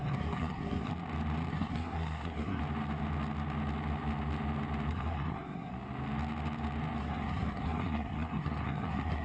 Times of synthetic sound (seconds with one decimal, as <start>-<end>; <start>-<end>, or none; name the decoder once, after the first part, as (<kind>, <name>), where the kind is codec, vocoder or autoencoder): 0.0-0.9 (codec, SNAC); 1.5-2.6; 4.9-5.7; 7.0-9.2